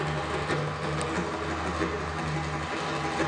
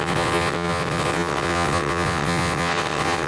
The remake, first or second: second